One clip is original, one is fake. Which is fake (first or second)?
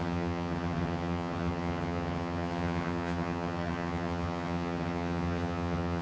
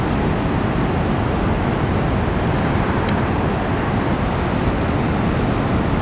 first